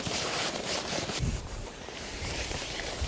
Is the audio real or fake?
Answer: fake